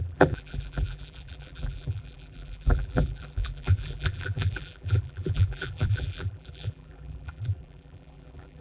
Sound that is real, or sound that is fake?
fake